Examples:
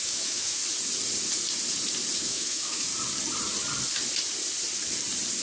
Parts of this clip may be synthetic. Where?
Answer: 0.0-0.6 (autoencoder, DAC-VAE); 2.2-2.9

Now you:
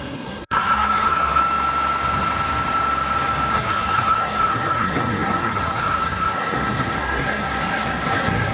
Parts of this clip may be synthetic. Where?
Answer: 0.0-1.4 (codec, SNAC); 3.5-8.5